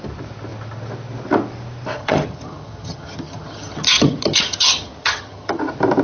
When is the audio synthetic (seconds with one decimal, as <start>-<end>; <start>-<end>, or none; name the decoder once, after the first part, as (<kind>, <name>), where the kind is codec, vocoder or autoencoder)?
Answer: 2.0-5.6 (vocoder, HiFi-GAN)